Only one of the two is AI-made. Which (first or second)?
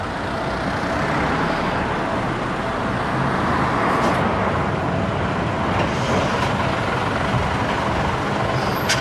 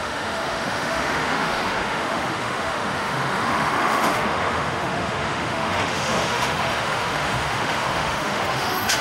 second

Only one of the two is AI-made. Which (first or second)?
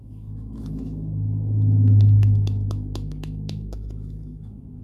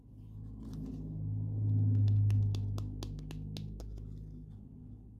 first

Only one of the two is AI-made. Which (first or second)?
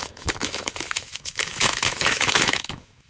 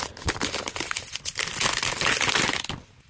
first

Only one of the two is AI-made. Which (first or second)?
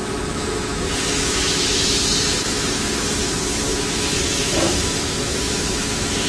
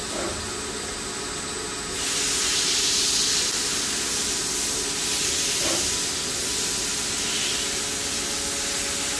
first